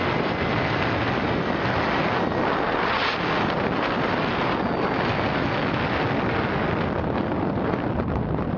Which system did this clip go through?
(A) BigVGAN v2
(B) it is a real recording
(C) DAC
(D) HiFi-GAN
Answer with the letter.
B